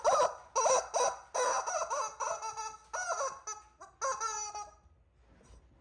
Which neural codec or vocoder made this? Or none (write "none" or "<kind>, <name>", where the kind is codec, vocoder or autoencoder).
none